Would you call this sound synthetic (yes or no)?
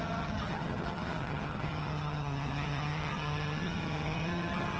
yes